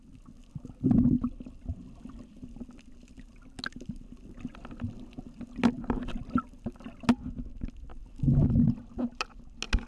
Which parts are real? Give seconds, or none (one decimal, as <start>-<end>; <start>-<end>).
0.0-9.9